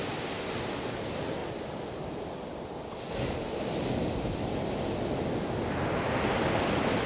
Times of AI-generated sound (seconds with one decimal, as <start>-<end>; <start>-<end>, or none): none